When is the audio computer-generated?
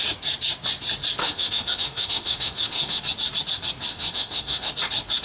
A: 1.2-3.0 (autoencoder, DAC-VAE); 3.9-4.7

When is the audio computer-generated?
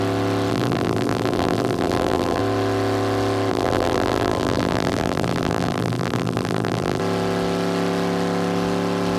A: 0.5-2.4 (vocoder, BigVGAN v2); 3.5-7.0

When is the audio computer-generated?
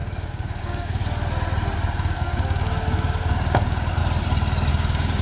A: 0.0-1.0 (codec, DAC); 1.9-4.0; 4.7-5.2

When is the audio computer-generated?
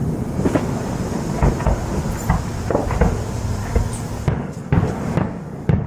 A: 3.6-5.9 (codec, DAC)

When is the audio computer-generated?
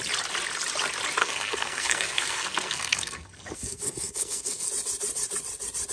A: 1.2-4.7 (codec, SNAC)